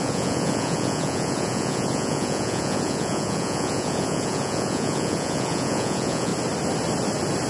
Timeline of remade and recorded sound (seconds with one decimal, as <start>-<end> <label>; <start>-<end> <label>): 0.0-6.3 remade; 6.3-7.5 recorded